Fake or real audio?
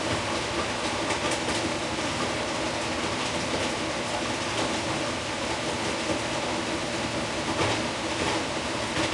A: real